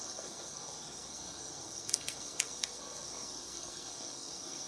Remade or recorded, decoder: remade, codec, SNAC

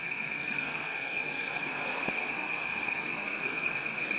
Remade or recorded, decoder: remade, codec, SNAC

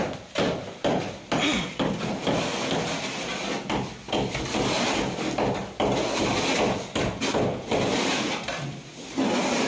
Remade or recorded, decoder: recorded